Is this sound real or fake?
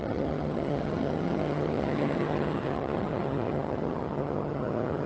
fake